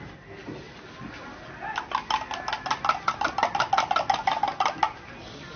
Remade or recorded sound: recorded